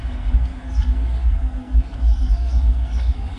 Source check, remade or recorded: remade